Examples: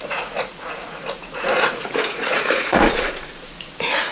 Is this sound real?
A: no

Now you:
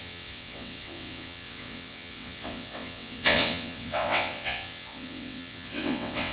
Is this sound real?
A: no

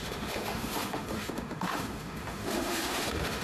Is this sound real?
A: no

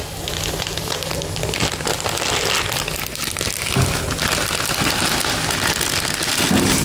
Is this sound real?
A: yes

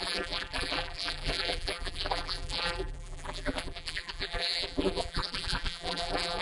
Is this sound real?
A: no